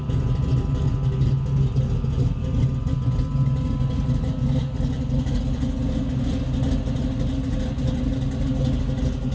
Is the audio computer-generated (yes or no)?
no